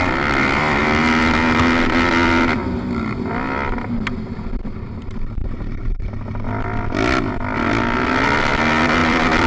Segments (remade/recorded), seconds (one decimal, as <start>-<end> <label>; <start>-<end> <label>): 0.0-5.4 recorded; 5.4-6.1 remade; 6.1-9.0 recorded; 9.0-9.5 remade

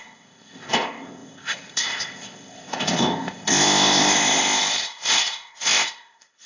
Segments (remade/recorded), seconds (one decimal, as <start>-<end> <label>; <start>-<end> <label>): 0.0-6.5 remade

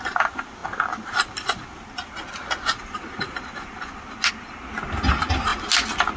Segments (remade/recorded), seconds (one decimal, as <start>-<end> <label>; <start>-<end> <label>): 0.0-6.2 recorded

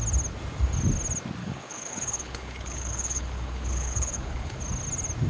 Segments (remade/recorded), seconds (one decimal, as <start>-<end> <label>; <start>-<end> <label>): 0.0-1.4 recorded; 1.4-4.6 remade; 4.6-5.3 recorded

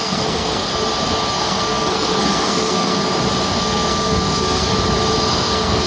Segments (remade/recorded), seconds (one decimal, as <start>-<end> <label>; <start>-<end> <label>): 0.0-0.7 remade; 0.7-1.3 recorded; 1.3-3.0 remade; 3.0-3.6 recorded; 3.6-4.7 remade; 4.7-5.2 recorded; 5.2-5.9 remade

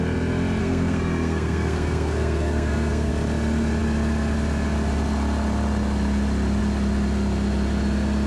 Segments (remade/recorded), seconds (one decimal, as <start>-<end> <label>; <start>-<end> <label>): 0.0-0.6 recorded; 0.6-3.1 remade; 3.1-8.3 recorded

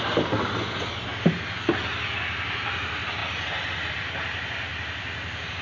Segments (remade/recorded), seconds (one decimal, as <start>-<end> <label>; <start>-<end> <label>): 0.0-3.2 recorded; 3.2-3.9 remade; 3.9-5.6 recorded